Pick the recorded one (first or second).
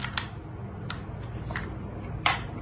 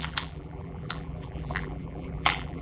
first